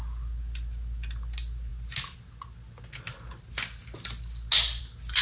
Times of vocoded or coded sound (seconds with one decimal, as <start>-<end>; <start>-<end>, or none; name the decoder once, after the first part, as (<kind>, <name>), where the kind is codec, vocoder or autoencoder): none